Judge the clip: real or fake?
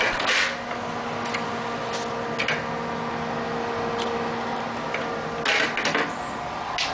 real